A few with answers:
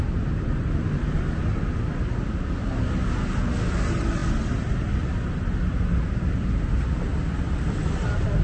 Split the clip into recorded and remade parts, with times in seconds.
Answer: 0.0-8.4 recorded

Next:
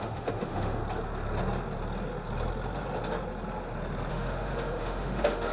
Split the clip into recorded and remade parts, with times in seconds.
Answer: 0.0-0.8 remade; 0.8-4.1 recorded; 4.1-5.5 remade

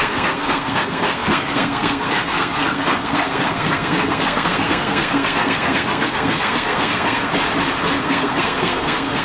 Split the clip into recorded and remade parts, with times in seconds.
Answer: 0.0-7.3 remade; 7.3-8.0 recorded; 8.0-9.2 remade

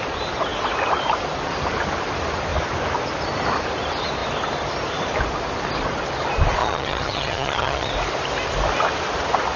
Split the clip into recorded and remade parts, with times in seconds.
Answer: 0.0-6.6 recorded; 6.6-7.9 remade; 7.9-9.6 recorded